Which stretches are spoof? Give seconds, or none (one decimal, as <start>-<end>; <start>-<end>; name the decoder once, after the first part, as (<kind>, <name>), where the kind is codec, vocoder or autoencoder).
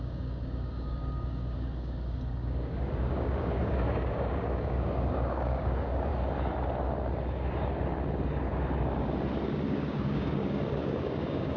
0.0-6.1 (codec, DAC); 9.7-11.6